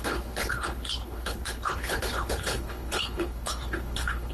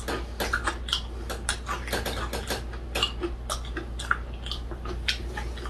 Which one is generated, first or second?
first